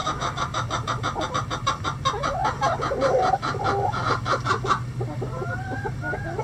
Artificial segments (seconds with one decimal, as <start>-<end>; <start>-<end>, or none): none